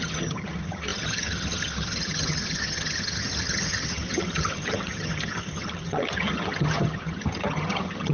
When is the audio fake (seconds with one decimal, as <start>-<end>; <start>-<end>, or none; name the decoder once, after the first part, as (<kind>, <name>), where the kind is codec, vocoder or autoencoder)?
0.0-8.1 (vocoder, HiFi-GAN)